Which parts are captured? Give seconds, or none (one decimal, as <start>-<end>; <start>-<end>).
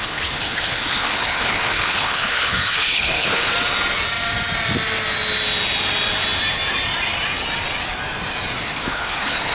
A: 3.5-8.6